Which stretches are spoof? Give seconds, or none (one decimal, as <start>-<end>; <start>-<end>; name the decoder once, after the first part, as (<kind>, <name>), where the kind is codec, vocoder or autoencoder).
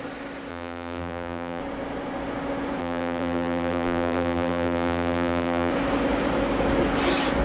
0.5-1.6 (vocoder, BigVGAN v2); 2.8-5.7